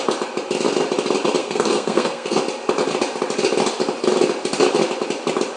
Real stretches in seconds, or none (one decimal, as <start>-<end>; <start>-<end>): 0.0-1.4; 2.4-5.6